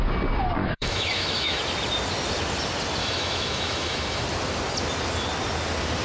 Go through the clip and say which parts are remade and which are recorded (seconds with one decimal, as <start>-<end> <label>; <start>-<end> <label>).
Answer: 0.0-0.6 recorded; 0.6-1.6 remade; 1.6-3.0 recorded; 3.0-4.2 remade; 4.2-6.0 recorded